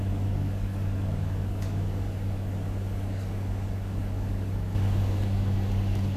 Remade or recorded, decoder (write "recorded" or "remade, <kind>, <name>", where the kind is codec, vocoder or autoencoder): remade, codec, DAC